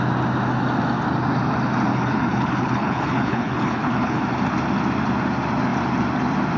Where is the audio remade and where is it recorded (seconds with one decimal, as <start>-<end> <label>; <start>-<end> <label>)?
0.0-1.9 recorded; 1.9-4.2 remade; 4.2-6.6 recorded